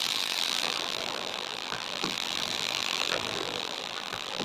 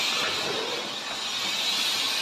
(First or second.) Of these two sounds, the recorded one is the second